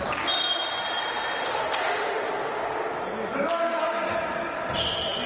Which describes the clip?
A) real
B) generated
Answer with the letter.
A